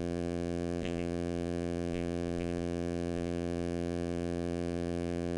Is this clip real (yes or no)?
no